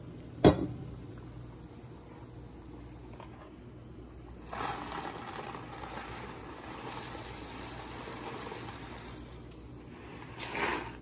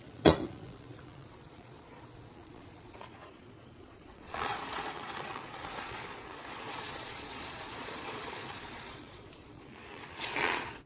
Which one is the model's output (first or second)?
second